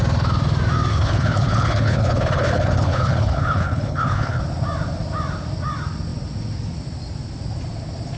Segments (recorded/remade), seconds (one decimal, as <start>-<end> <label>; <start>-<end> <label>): 0.0-0.9 recorded; 0.9-4.4 remade; 4.4-8.2 recorded